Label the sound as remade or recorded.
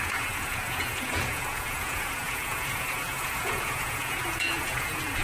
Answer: remade